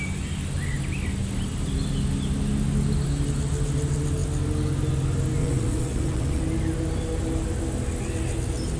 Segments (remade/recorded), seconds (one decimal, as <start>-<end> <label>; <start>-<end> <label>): 0.0-5.4 recorded; 5.4-6.4 remade; 6.4-8.8 recorded